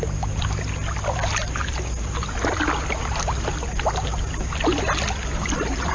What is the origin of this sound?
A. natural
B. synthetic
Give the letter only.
A